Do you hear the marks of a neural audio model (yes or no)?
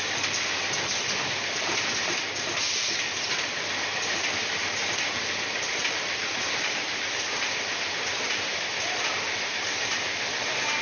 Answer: yes